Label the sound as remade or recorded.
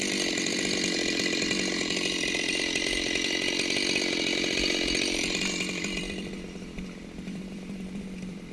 remade